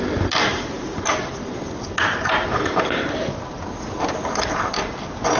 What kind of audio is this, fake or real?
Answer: real